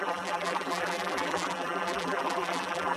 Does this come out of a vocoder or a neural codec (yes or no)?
yes